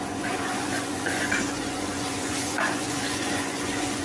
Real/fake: fake